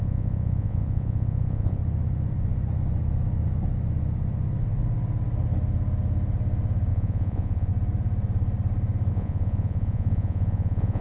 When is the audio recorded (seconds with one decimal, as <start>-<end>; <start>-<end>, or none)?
1.8-6.9; 7.7-9.1